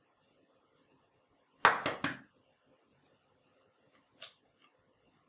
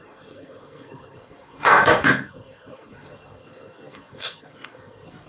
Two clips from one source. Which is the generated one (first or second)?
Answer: second